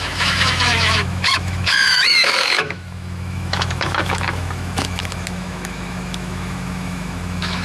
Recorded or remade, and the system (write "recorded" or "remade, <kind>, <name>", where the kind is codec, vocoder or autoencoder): remade, autoencoder, DAC-VAE